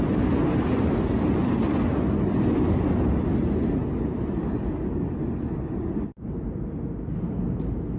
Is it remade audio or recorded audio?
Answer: recorded